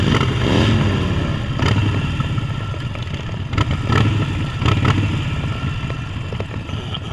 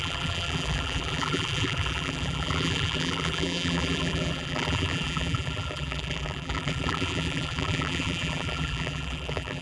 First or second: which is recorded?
first